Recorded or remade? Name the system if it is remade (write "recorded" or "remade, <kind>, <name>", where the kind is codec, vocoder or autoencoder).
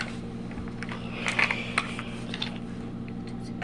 recorded